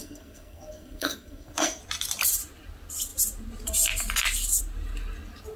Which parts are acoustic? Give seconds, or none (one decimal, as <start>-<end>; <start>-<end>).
1.8-5.6